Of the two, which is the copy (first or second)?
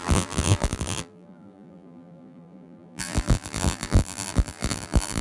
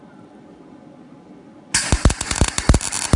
first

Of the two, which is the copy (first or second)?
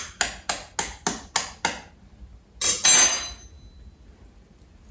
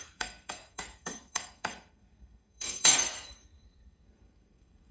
second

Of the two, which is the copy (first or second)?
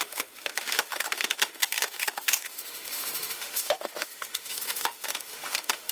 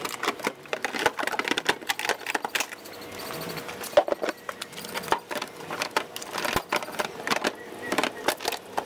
first